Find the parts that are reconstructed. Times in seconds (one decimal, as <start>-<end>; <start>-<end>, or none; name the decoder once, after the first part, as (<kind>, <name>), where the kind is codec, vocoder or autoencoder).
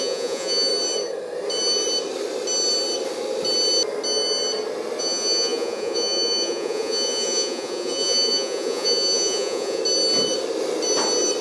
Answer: 0.0-0.7 (vocoder, Vocos); 5.0-9.8